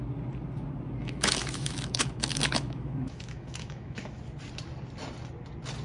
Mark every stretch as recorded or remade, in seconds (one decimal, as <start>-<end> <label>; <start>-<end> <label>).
0.0-1.0 recorded; 1.0-4.2 remade; 4.2-5.8 recorded